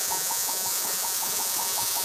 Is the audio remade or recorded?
remade